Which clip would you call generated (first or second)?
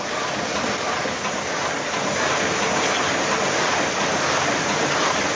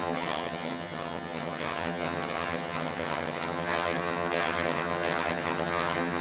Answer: second